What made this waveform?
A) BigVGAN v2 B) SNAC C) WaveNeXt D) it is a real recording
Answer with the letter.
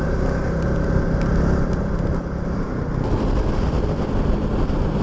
D